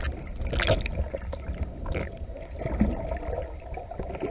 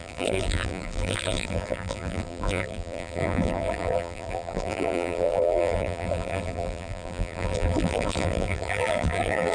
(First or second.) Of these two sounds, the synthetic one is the second